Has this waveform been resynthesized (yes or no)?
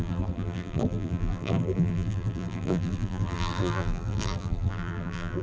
yes